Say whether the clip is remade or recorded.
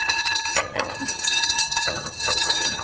remade